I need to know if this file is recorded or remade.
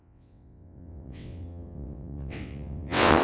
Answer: remade